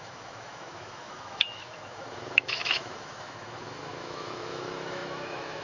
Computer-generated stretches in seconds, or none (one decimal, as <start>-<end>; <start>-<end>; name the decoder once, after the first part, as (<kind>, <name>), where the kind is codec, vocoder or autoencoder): 0.0-5.6 (autoencoder, DAC-VAE)